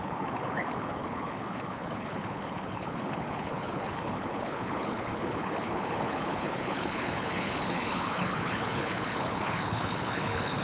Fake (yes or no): yes